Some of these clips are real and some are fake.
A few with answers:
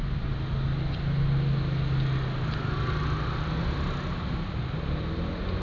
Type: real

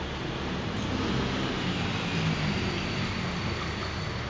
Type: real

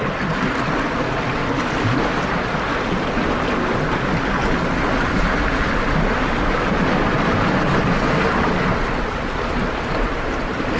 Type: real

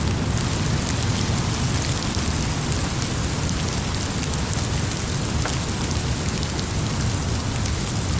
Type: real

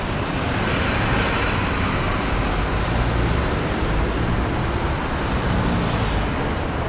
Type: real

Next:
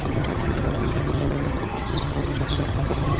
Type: fake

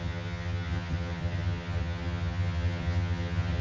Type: fake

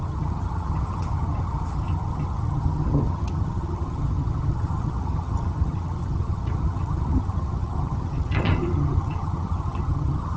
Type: fake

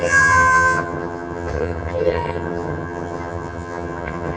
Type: fake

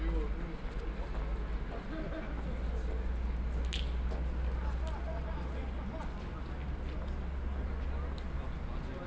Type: real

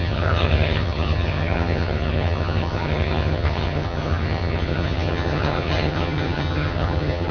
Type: fake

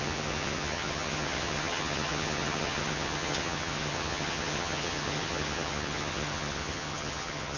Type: fake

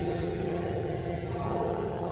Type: fake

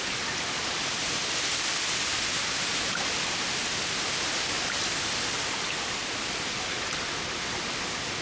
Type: real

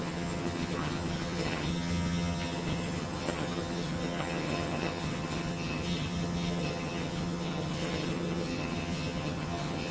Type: fake